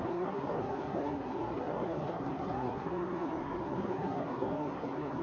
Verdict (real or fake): fake